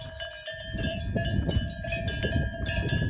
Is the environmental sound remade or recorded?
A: recorded